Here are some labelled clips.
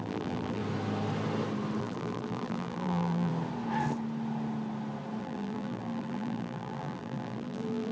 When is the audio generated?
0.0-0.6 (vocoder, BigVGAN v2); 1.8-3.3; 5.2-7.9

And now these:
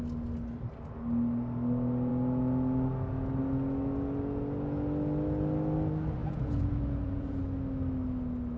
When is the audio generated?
6.2-7.4 (vocoder, Vocos)

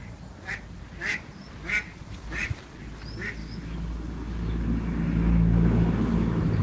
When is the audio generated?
3.4-6.6 (autoencoder, DAC-VAE)

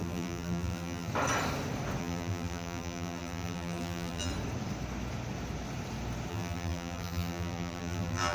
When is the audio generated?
0.0-1.1 (vocoder, BigVGAN v2); 2.0-4.3; 6.3-8.3